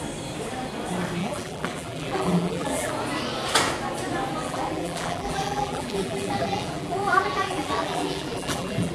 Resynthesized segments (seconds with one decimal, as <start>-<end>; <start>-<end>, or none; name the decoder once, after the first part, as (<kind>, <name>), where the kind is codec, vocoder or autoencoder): 1.2-2.9 (vocoder, BigVGAN v2); 4.4-8.9